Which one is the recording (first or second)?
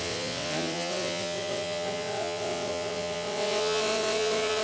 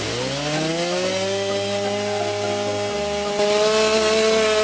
second